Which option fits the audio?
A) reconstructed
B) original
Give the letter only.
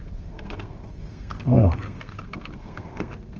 A